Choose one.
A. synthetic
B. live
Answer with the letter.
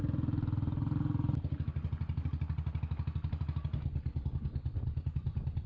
B